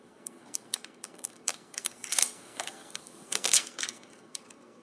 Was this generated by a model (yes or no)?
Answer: yes